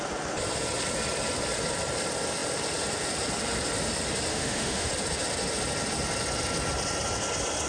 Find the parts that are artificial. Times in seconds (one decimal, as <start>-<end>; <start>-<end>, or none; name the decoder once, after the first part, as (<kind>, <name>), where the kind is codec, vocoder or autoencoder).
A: 4.3-4.9 (autoencoder, DAC-VAE)